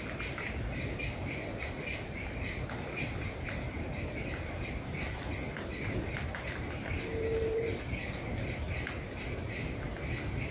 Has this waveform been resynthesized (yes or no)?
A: yes